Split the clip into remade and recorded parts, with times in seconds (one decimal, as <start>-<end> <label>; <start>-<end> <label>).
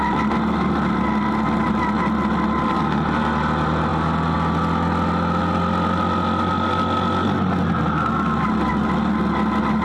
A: 0.0-9.8 recorded